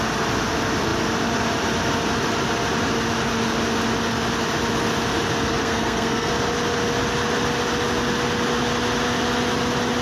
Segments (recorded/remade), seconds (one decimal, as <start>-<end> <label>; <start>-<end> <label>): 0.0-5.6 recorded; 5.6-6.3 remade; 6.3-10.0 recorded